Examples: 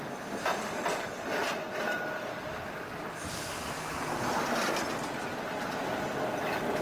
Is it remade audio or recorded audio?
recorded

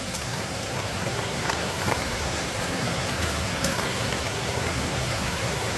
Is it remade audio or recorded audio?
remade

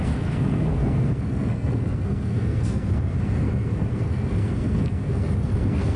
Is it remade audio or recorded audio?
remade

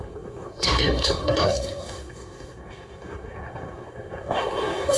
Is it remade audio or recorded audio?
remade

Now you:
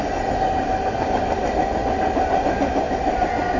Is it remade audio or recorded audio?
recorded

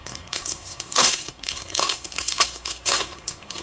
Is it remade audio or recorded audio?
remade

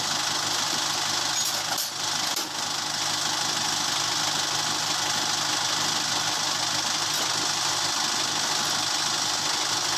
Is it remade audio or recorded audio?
recorded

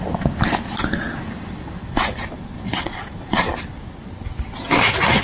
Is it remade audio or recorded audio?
recorded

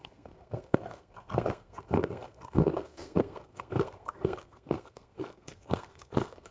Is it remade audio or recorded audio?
remade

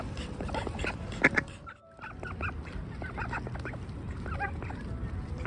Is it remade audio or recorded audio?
recorded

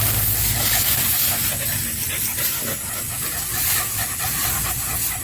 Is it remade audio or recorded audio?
recorded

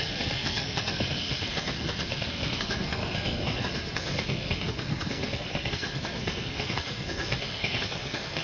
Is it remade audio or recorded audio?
remade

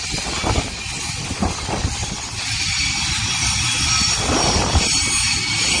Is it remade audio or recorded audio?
recorded